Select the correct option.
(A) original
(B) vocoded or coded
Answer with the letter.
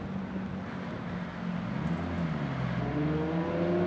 A